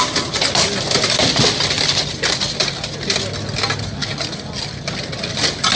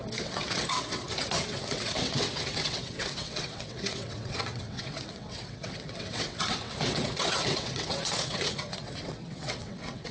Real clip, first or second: first